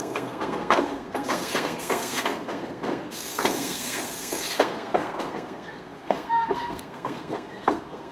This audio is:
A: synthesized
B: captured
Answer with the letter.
A